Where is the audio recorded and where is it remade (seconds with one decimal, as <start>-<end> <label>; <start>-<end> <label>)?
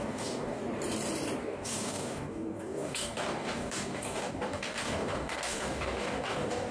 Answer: 0.0-0.6 remade; 0.6-1.4 recorded; 1.4-6.7 remade